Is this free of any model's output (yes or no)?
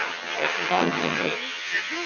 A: no